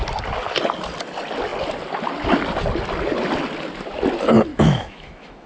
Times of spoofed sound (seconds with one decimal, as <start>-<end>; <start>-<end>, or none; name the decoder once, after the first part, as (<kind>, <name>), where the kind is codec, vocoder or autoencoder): 4.5-5.5 (autoencoder, DAC-VAE)